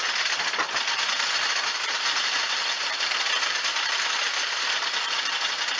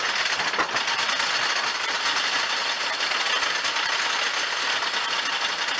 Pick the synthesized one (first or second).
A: first